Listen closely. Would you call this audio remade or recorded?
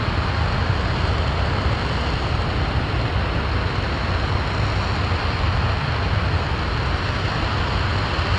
recorded